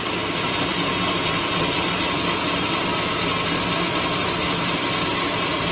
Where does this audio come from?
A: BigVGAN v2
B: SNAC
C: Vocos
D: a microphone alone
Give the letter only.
D